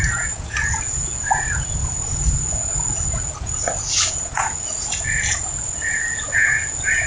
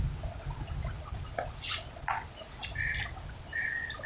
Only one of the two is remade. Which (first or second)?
first